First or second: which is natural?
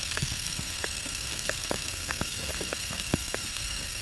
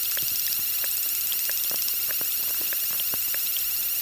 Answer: second